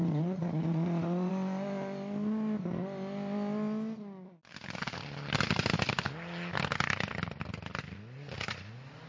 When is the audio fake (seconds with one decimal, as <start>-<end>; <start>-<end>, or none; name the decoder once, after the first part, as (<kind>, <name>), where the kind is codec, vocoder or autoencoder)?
0.0-1.3 (vocoder, Vocos)